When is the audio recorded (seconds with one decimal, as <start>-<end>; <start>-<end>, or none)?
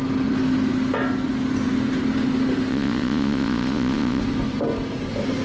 0.0-2.7; 4.2-5.4